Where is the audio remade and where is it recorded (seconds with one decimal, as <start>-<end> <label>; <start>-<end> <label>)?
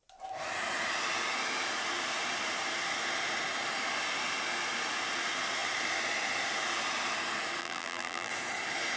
0.0-7.6 recorded; 7.6-8.3 remade; 8.3-9.0 recorded